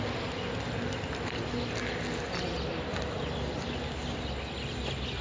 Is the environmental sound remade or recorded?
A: recorded